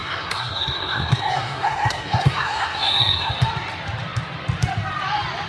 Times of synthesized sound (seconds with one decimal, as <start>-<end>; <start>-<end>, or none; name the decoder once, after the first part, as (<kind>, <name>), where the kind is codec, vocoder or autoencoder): 0.0-3.3 (codec, SNAC)